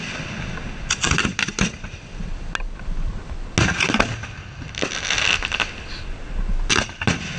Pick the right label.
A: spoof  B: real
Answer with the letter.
B